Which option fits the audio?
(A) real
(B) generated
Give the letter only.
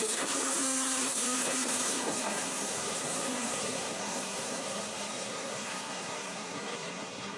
B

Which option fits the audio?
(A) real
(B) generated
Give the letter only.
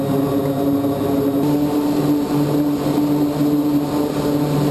A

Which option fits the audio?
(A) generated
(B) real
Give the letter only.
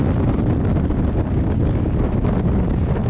B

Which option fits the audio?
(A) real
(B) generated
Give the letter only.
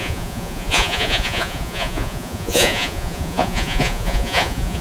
B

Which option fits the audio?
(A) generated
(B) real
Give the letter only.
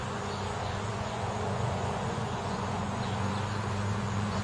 A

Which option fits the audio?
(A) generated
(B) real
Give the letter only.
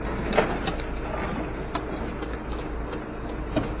B